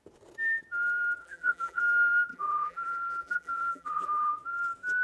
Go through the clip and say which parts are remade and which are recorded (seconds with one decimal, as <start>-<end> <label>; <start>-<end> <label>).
0.0-1.2 recorded; 1.2-1.8 remade; 1.8-2.3 recorded; 2.3-4.3 remade; 4.3-5.0 recorded